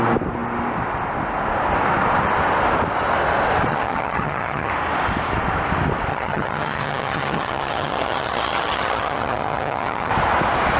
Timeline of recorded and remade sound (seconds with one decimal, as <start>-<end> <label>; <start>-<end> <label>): 0.0-3.7 recorded; 3.7-4.7 remade; 4.7-6.1 recorded; 6.1-10.1 remade; 10.1-10.8 recorded